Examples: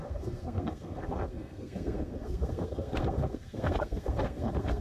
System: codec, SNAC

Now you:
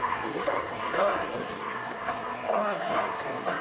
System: codec, SNAC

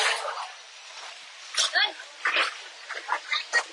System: none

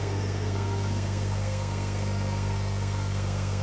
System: codec, SNAC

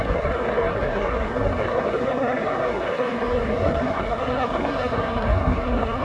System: codec, SNAC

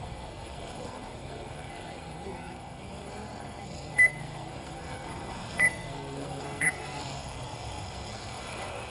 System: codec, SNAC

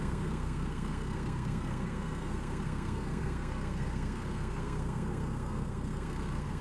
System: codec, SNAC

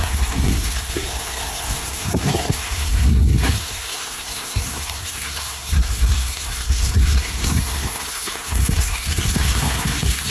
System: codec, SNAC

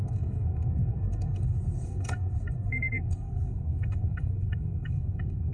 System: codec, SNAC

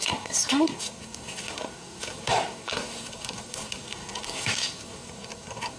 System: codec, SNAC